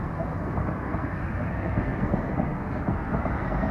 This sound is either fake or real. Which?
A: fake